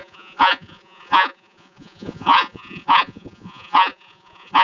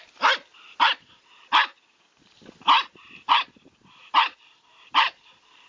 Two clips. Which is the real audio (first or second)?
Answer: second